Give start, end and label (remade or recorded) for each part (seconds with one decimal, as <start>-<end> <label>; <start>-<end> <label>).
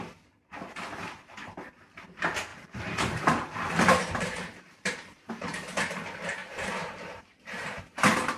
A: 0.0-2.5 recorded; 2.5-5.3 remade; 5.3-6.4 recorded; 6.4-7.8 remade; 7.8-8.4 recorded